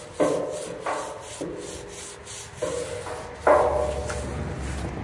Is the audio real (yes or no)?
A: yes